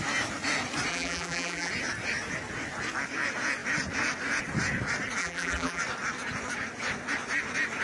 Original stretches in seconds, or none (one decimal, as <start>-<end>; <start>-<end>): 0.0-0.9; 1.7-5.2; 5.8-7.8